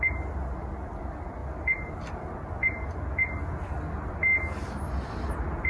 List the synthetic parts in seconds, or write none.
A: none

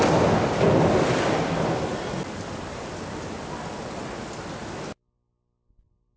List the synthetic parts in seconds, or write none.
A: none